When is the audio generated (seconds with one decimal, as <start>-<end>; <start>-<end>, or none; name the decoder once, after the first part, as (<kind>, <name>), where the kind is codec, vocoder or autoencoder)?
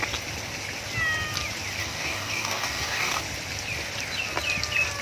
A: 1.8-3.2 (codec, DAC)